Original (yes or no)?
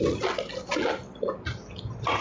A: yes